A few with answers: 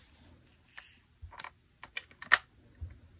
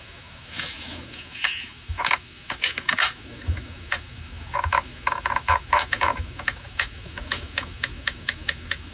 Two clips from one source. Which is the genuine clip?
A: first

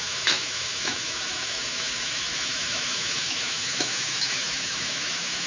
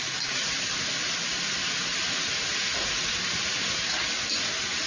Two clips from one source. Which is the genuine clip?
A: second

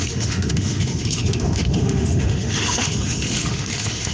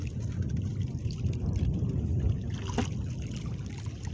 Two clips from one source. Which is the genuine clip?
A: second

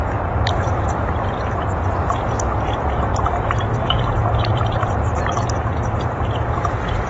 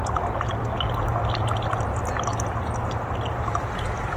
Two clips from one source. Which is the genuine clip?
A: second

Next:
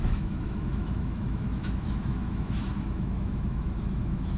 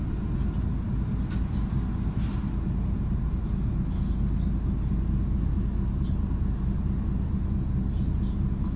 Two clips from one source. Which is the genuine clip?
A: second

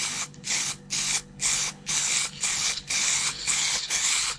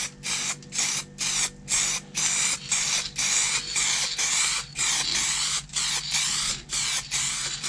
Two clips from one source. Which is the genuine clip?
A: second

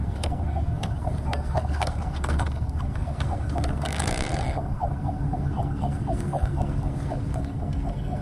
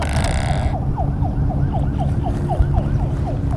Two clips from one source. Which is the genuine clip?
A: second